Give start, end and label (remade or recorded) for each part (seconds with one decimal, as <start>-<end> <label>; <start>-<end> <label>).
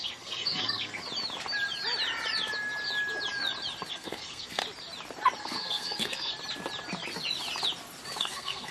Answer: 0.0-1.0 remade; 1.0-3.9 recorded; 3.9-4.6 remade; 4.6-5.4 recorded; 5.4-6.3 remade; 6.3-8.2 recorded; 8.2-8.7 remade